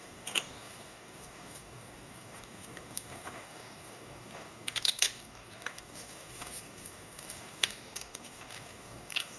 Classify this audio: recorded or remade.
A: remade